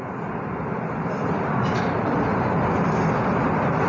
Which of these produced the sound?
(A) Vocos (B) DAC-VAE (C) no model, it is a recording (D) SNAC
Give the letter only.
C